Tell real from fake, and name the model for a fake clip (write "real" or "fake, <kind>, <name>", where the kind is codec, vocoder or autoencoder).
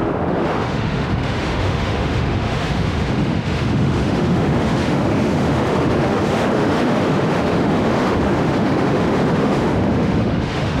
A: fake, autoencoder, DAC-VAE